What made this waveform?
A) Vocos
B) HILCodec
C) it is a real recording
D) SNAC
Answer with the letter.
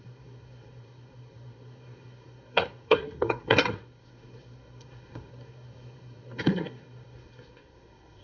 D